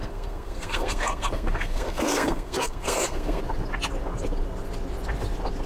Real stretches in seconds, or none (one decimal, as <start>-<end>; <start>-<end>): 3.4-5.7